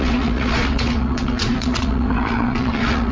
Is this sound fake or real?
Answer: fake